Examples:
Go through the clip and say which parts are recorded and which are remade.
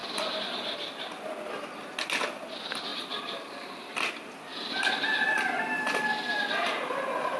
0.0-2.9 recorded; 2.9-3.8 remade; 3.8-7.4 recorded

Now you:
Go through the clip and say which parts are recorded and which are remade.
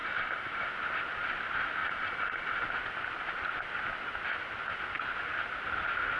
0.0-0.7 remade; 0.7-1.8 recorded; 1.8-2.7 remade; 2.7-6.2 recorded